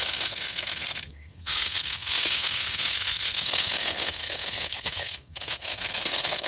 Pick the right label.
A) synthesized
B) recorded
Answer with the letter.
A